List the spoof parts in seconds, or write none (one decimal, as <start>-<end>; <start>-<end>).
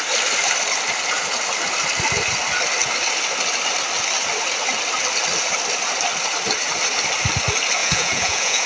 7.8-8.7